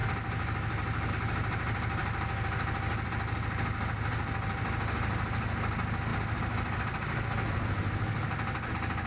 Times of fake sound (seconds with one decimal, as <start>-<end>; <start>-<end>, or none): none